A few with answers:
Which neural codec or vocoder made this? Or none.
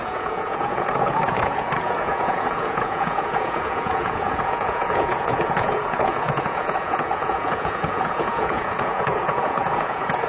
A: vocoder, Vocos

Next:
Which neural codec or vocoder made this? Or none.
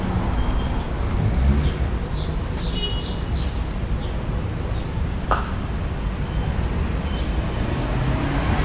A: none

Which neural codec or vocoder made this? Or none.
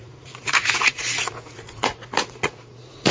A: vocoder, Vocos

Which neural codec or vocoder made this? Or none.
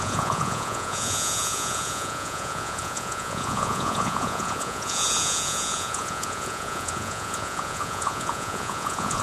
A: vocoder, Vocos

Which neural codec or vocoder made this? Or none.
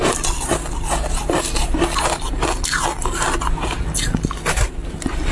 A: none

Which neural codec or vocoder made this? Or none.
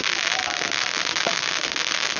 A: none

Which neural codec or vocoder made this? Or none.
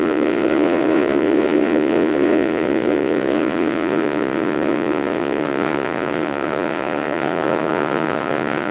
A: vocoder, Vocos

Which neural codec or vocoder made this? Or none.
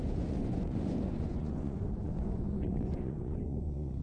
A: vocoder, Vocos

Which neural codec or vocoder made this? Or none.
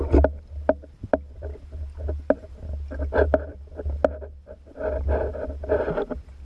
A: none